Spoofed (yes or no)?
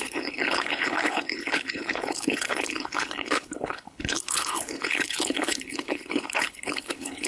yes